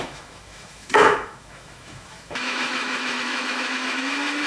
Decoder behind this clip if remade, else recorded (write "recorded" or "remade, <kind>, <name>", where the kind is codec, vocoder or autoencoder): remade, autoencoder, DAC-VAE